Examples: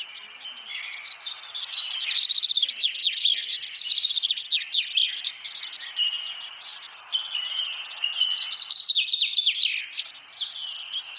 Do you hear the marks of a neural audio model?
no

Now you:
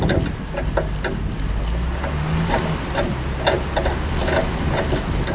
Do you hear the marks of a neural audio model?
no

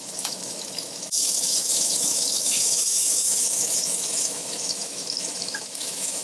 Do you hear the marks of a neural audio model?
yes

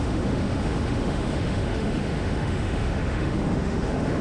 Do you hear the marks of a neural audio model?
yes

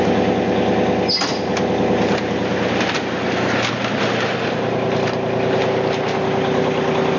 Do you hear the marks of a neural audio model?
no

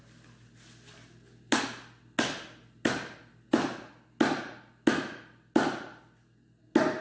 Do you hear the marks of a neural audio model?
no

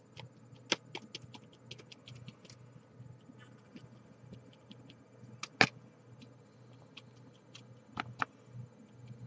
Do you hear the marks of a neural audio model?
no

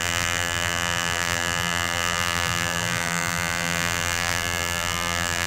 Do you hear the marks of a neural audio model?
yes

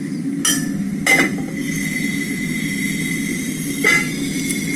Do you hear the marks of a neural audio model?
no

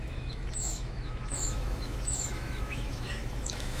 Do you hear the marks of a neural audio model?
yes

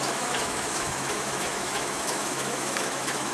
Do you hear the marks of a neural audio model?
yes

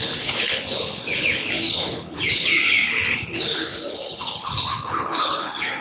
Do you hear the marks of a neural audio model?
yes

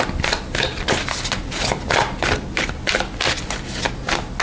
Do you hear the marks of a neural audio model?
no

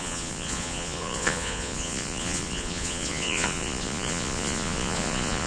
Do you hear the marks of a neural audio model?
yes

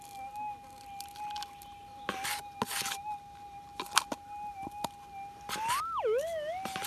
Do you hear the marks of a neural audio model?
no